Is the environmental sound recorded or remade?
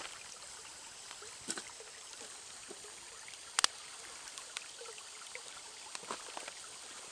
recorded